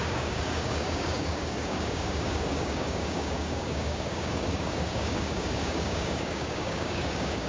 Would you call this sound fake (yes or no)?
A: yes